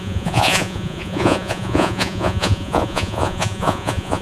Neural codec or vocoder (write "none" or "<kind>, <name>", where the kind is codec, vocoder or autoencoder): vocoder, Vocos